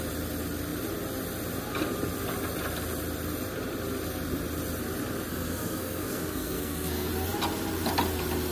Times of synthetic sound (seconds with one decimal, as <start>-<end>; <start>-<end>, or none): 5.3-7.1